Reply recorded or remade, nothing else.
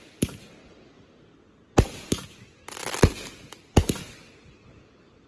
recorded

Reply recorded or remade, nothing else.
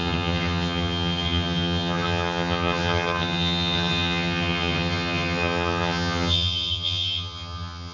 remade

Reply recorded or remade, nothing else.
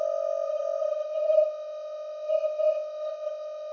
remade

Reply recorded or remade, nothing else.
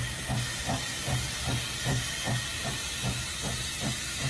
recorded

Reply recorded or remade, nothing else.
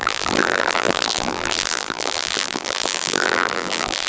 remade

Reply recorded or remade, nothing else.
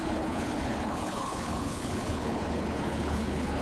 remade